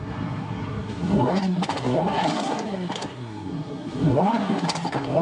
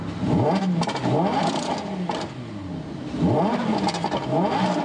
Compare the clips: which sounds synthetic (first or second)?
first